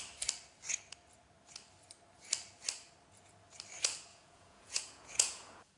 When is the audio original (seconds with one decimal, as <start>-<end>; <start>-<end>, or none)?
0.0-4.1